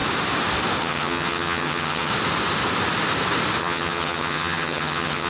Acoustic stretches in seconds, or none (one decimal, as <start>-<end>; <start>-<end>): 0.0-0.8; 2.1-3.6